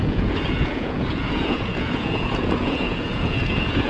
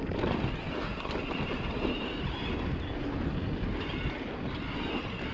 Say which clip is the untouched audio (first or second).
second